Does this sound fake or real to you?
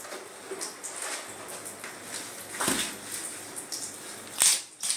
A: real